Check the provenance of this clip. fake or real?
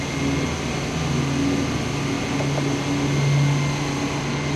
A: real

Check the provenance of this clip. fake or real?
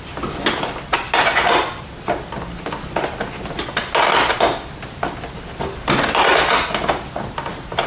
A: real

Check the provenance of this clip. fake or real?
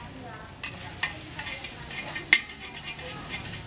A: real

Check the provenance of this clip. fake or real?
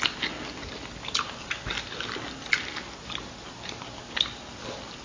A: real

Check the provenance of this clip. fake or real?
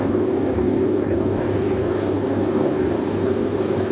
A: fake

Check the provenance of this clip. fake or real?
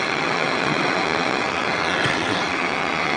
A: fake